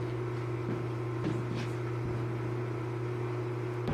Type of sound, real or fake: real